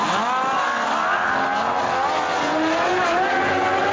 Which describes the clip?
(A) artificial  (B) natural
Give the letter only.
B